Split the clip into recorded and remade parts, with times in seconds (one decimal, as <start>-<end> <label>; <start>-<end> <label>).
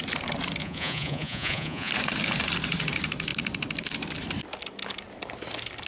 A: 0.0-0.6 recorded; 0.6-1.9 remade; 1.9-5.9 recorded